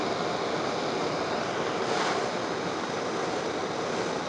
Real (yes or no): yes